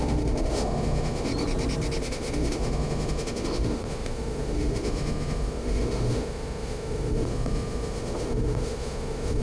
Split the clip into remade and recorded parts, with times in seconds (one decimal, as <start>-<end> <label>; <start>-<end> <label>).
0.0-1.3 remade; 1.3-2.0 recorded; 2.0-9.4 remade